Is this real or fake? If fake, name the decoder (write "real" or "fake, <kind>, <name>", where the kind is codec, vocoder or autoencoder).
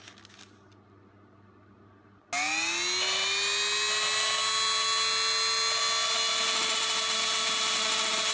real